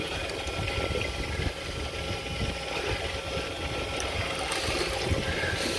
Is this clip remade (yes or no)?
no